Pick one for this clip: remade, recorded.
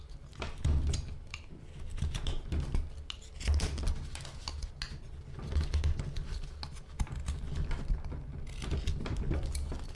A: recorded